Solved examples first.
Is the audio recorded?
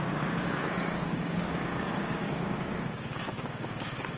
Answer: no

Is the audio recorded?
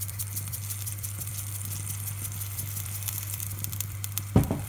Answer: no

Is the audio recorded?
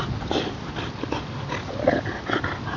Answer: yes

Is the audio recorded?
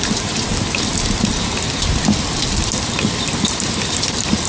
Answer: yes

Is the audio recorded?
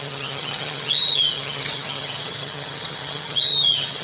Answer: no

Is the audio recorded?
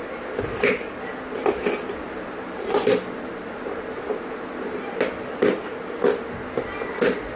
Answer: yes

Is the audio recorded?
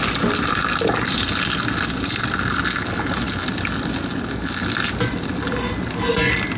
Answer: yes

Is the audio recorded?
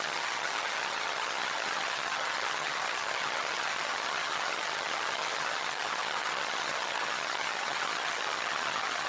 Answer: no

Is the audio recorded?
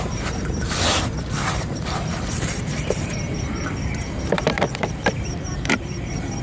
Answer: no